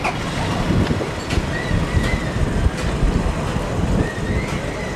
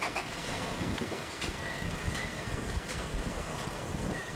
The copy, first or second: second